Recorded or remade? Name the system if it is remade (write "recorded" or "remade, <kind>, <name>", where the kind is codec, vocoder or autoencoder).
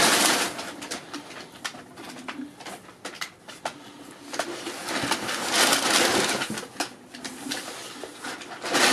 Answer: recorded